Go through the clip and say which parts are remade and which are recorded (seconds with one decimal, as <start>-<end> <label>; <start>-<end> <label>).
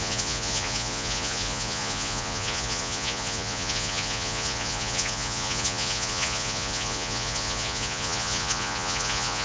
0.0-9.4 remade